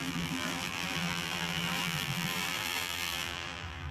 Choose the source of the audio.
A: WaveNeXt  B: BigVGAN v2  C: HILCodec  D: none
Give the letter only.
B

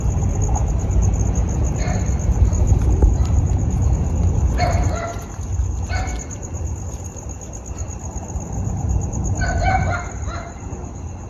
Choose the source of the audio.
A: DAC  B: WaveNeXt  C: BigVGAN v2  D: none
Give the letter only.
D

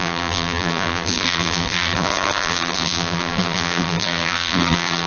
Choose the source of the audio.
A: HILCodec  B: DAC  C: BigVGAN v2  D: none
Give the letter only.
C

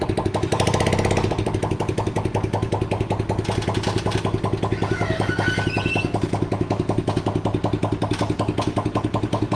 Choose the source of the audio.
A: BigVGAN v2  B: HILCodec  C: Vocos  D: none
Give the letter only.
D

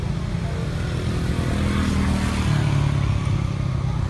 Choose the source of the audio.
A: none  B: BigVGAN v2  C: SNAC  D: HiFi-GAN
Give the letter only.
A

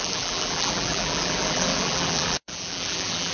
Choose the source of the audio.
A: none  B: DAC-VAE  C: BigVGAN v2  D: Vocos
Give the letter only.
C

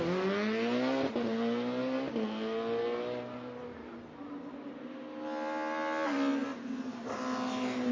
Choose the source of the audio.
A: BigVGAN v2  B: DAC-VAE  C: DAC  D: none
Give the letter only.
D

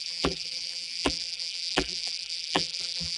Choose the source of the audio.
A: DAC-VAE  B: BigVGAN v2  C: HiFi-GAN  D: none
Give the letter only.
B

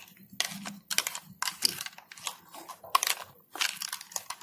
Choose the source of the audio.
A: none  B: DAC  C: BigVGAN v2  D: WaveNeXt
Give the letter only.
A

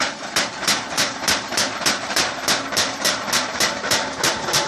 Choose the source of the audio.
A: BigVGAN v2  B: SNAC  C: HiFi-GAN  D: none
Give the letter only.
A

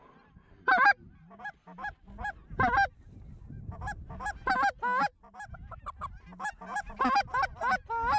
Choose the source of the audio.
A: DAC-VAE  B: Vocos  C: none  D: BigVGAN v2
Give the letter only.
C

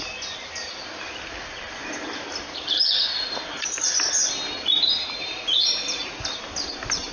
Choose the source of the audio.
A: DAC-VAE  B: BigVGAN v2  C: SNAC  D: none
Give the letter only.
D